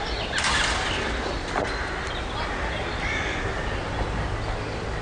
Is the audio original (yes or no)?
yes